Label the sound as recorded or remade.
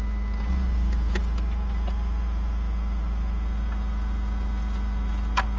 recorded